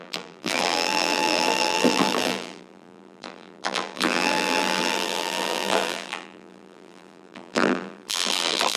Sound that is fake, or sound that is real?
fake